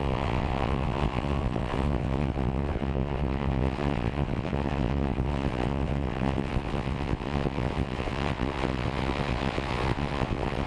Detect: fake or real fake